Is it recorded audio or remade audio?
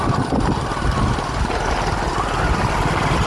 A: recorded